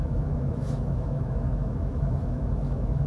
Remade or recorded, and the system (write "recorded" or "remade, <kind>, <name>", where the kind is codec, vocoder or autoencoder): remade, autoencoder, DAC-VAE